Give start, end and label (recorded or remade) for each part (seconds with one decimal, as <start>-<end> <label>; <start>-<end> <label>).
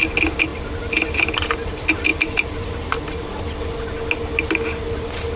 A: 0.0-5.4 recorded